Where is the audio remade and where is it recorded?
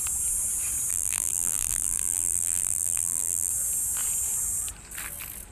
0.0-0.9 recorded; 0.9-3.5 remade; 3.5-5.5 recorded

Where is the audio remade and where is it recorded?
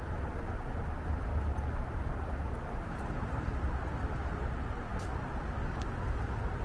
0.0-6.6 recorded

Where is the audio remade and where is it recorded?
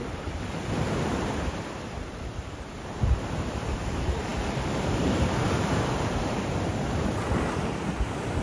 0.0-4.3 remade; 4.3-4.8 recorded; 4.8-6.2 remade; 6.2-6.8 recorded; 6.8-8.4 remade